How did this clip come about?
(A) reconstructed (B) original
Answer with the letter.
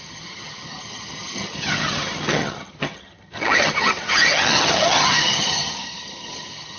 A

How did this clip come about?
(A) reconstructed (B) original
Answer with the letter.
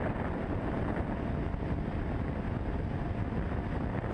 A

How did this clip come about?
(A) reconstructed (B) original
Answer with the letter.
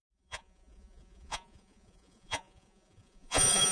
A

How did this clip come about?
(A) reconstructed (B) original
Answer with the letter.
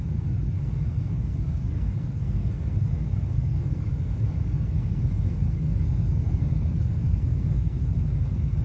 A